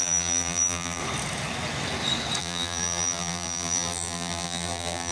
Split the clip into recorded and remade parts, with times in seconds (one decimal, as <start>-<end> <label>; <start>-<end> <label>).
0.0-1.0 remade; 1.0-2.4 recorded; 2.4-5.1 remade